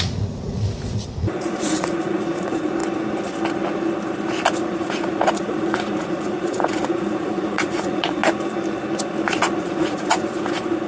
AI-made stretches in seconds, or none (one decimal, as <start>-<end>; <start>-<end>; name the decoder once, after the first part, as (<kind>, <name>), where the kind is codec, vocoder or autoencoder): 0.0-2.8 (vocoder, Vocos); 4.6-8.2; 9.6-10.9